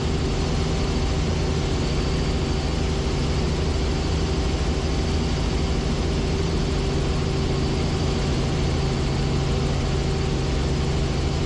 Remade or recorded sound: recorded